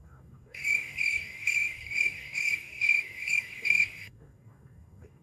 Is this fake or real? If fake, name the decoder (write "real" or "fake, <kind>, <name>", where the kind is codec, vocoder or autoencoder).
fake, codec, DAC